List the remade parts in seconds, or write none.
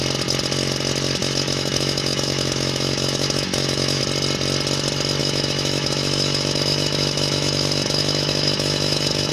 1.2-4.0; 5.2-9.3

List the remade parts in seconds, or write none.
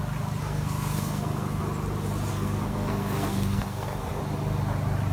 0.4-1.6; 2.3-4.2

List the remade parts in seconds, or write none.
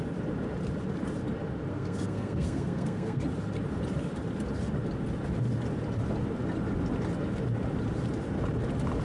1.7-3.2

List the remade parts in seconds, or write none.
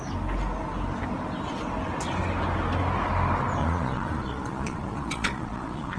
3.6-6.0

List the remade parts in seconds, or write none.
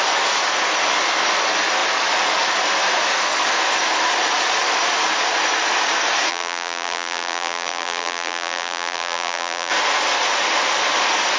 6.3-9.7